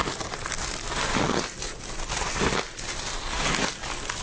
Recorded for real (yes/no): yes